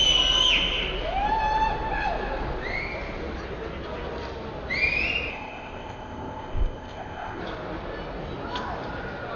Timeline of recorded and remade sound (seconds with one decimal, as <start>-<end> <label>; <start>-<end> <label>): 0.0-5.3 recorded; 5.3-7.4 remade; 7.4-9.4 recorded